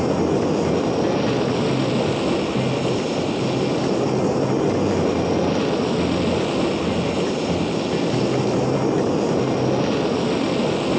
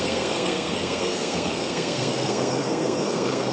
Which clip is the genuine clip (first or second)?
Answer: first